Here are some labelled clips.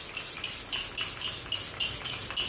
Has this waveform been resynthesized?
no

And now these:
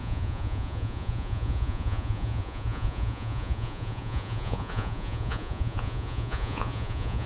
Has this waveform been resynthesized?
yes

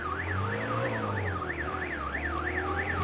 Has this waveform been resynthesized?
no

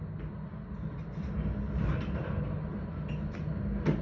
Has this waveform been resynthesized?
no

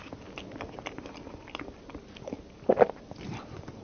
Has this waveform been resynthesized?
no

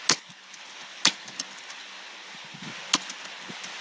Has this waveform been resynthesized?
no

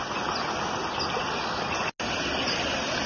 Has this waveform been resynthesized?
no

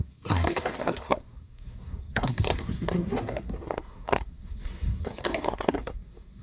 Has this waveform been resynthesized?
yes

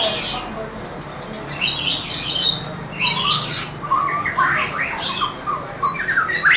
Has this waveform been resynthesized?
no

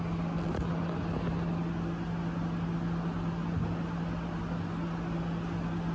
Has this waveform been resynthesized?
no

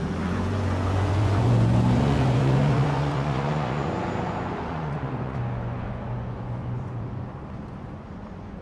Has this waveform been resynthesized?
yes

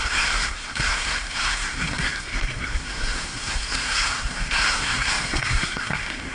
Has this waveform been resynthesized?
yes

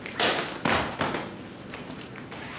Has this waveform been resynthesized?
no